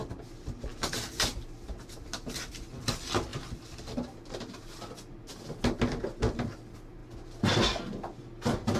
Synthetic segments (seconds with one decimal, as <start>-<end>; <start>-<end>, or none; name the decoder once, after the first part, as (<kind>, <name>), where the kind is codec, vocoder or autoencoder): 7.0-7.6 (vocoder, BigVGAN v2)